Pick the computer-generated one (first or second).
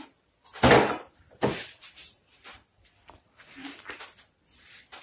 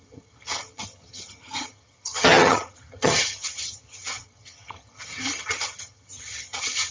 second